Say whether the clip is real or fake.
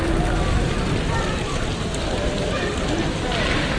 fake